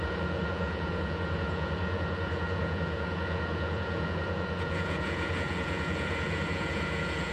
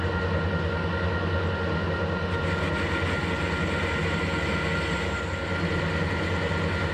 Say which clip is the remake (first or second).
first